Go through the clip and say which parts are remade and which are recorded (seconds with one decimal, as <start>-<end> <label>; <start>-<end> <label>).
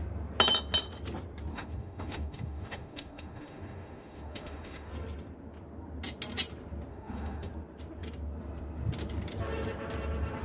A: 0.0-1.5 recorded; 1.5-4.9 remade; 4.9-6.9 recorded; 6.9-7.5 remade; 7.5-10.4 recorded